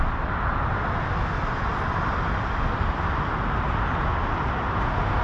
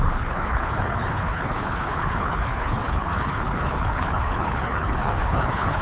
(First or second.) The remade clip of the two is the second